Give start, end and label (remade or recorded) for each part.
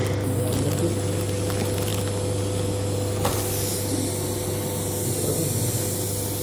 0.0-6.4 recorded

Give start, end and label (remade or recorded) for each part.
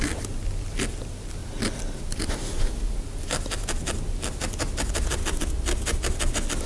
0.0-6.7 recorded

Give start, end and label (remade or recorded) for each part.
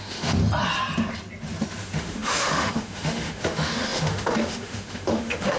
0.0-0.4 remade; 0.4-1.8 recorded; 1.8-5.6 remade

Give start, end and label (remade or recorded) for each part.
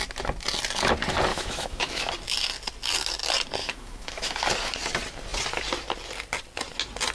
0.0-1.3 recorded; 1.3-2.1 remade; 2.1-3.6 recorded; 3.6-4.4 remade; 4.4-7.1 recorded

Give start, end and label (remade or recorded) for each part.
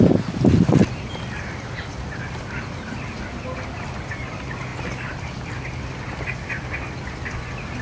0.0-7.8 recorded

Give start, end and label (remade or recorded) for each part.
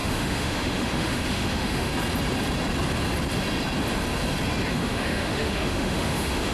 0.0-1.9 remade; 1.9-4.7 recorded; 4.7-6.5 remade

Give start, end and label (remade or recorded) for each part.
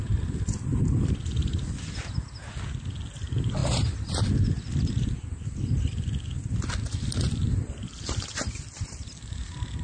0.0-9.8 recorded